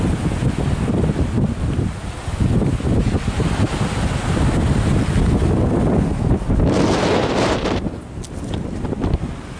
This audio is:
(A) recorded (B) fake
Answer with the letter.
A